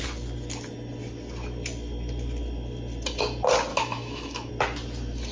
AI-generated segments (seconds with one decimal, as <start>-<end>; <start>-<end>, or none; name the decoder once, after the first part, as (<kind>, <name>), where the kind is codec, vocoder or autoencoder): 3.7-4.5 (autoencoder, DAC-VAE)